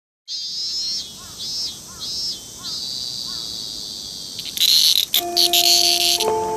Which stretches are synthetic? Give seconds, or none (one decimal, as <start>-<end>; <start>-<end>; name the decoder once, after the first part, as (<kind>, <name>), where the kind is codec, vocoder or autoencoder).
none